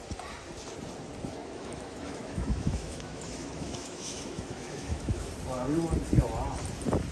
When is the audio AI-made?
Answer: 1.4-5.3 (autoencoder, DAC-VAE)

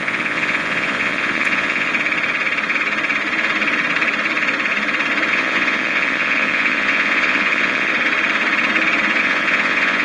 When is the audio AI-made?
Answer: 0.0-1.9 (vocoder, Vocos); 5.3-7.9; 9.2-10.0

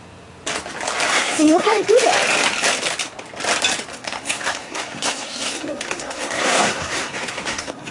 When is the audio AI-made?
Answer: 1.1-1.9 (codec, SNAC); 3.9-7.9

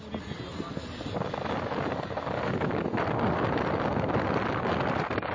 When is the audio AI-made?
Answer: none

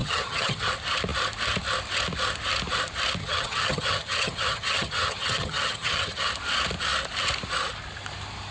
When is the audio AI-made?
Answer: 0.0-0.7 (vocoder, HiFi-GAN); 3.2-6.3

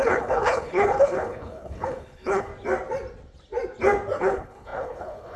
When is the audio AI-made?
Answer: 0.0-2.5 (codec, HILCodec); 4.2-5.4